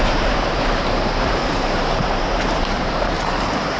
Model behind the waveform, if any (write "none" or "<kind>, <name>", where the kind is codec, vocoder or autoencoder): vocoder, BigVGAN v2